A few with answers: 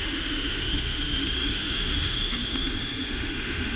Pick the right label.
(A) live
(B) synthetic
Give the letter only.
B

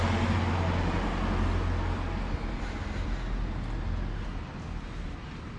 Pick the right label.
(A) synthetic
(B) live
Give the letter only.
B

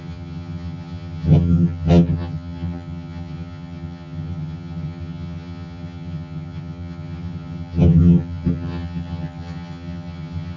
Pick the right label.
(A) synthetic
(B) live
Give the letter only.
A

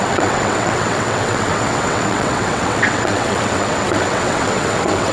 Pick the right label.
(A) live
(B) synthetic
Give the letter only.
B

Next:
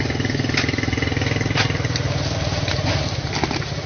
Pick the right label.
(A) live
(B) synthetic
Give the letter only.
A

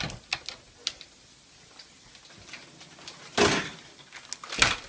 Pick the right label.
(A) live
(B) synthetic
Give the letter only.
A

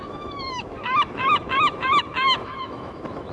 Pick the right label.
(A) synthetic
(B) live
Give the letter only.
A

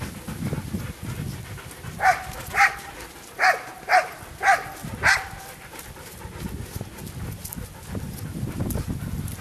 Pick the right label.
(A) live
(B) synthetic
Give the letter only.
A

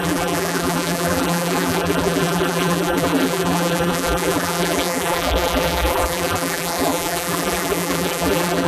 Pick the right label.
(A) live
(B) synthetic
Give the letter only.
B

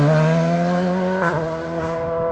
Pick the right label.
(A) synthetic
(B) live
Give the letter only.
B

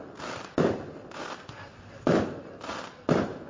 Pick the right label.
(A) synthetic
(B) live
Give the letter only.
B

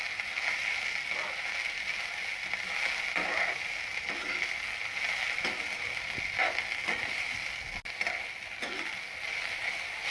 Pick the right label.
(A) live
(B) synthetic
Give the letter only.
A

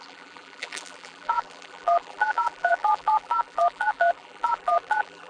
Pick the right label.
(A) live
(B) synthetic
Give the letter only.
B